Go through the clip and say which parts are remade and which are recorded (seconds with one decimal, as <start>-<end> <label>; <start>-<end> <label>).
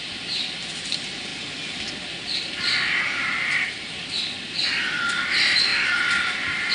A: 0.0-1.3 remade; 1.3-2.4 recorded; 2.4-6.7 remade